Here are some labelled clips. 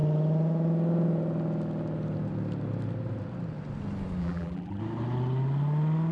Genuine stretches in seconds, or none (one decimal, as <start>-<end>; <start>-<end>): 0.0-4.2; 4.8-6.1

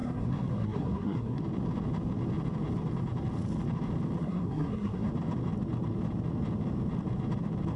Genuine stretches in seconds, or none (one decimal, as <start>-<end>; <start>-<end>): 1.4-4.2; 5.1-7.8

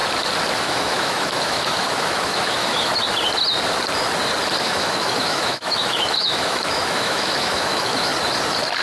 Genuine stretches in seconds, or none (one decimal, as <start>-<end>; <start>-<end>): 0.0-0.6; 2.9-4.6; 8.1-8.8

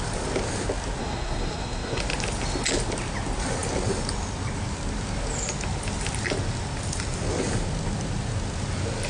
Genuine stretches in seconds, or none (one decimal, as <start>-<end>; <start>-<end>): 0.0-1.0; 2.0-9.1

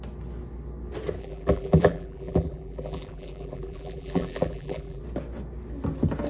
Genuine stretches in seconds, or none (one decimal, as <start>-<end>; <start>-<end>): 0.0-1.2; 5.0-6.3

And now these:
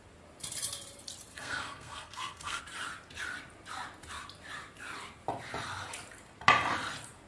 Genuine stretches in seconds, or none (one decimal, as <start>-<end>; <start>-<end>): 0.0-1.3; 2.6-7.3

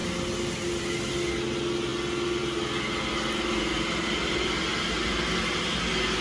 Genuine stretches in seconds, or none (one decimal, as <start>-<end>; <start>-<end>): 0.0-6.2